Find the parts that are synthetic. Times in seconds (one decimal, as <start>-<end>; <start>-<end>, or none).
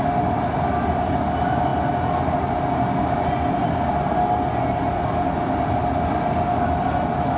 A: none